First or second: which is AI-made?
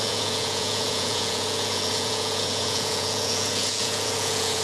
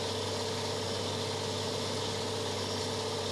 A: first